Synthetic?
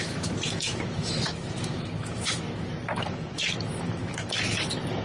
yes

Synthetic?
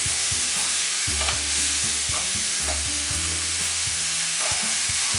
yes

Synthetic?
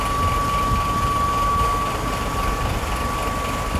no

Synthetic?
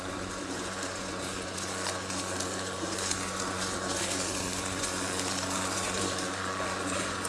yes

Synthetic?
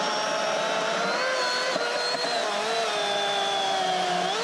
no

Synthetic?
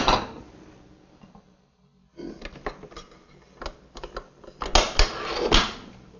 no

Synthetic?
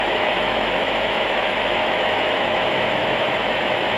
yes